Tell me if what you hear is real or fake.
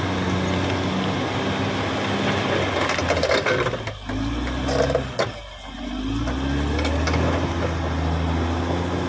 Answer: real